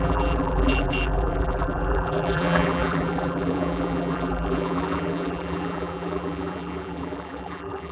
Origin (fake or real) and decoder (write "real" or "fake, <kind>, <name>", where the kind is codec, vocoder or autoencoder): fake, vocoder, BigVGAN v2